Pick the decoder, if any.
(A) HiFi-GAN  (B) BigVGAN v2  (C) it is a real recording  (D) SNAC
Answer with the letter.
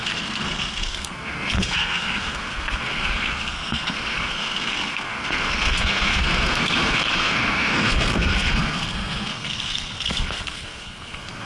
D